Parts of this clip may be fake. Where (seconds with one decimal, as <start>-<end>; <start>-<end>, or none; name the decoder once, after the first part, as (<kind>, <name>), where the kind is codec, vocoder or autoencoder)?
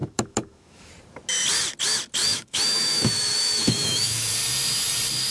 0.0-0.9 (autoencoder, DAC-VAE); 2.2-4.3